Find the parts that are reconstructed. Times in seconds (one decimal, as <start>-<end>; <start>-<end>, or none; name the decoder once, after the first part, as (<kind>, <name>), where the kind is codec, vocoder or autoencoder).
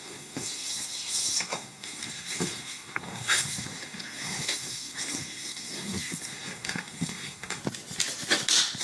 0.0-7.6 (codec, SNAC)